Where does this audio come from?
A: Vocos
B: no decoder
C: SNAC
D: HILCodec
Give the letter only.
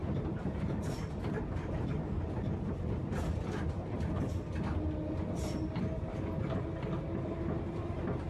B